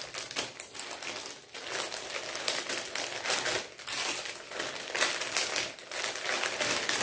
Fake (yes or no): no